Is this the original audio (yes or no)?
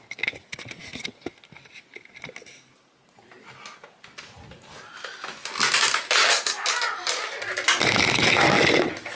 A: yes